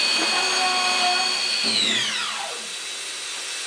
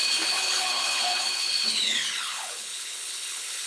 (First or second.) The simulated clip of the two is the second